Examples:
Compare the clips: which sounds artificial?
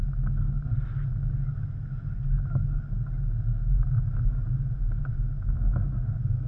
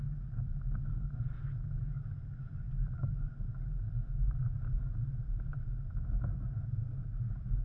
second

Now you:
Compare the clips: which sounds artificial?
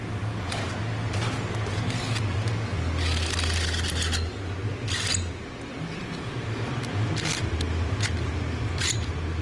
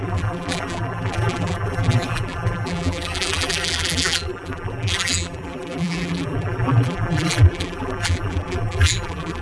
second